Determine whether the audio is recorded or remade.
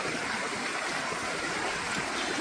recorded